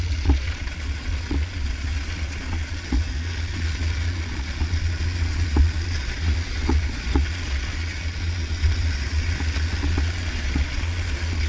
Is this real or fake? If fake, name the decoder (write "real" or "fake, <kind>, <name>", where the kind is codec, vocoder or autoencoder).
fake, vocoder, Vocos